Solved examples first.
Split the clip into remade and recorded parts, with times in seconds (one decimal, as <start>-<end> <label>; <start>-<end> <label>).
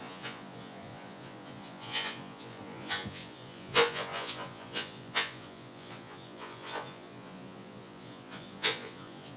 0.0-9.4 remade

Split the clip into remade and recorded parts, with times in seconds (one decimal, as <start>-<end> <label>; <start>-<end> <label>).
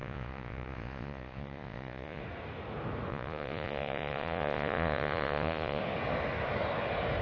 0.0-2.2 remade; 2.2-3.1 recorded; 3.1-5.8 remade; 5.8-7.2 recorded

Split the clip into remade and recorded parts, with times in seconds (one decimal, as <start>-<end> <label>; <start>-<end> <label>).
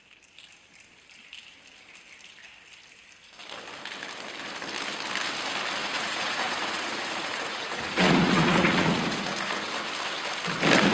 0.0-5.8 recorded; 5.8-9.9 remade; 9.9-10.9 recorded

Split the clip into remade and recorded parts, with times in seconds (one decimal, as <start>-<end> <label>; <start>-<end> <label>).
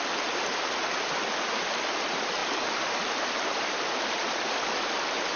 0.0-5.4 recorded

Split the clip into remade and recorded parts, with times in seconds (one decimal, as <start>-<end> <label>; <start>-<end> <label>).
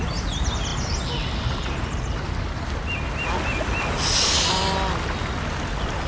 0.0-6.1 recorded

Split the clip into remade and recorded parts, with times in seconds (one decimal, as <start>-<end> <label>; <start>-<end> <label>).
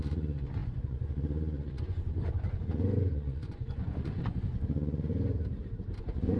0.0-5.1 remade; 5.1-6.0 recorded; 6.0-6.4 remade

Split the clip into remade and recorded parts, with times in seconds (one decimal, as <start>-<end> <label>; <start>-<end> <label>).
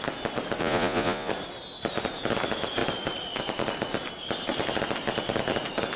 0.0-0.6 recorded; 0.6-1.3 remade; 1.3-6.0 recorded